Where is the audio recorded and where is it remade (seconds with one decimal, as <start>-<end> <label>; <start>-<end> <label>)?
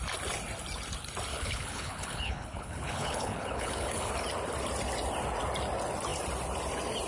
0.0-1.3 recorded; 1.3-4.1 remade; 4.1-7.1 recorded